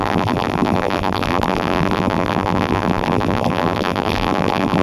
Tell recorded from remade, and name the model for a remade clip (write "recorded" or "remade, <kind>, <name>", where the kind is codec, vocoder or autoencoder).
remade, vocoder, BigVGAN v2